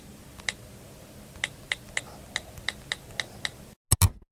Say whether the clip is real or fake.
real